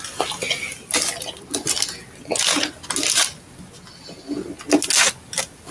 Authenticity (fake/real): real